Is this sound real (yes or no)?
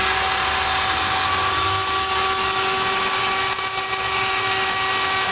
yes